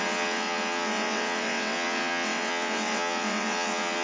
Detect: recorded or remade remade